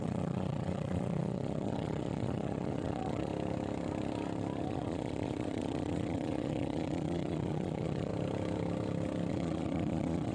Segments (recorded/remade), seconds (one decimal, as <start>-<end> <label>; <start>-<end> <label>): 0.0-3.3 remade; 3.3-4.7 recorded; 4.7-8.1 remade; 8.1-9.3 recorded; 9.3-10.3 remade